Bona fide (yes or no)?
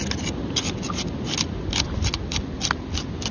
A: yes